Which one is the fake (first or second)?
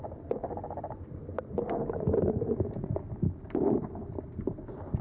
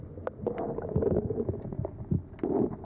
first